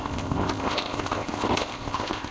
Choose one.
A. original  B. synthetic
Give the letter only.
B